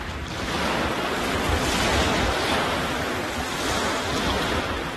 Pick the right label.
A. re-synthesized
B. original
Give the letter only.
B